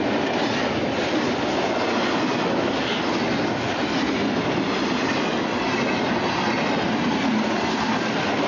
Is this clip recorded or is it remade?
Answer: recorded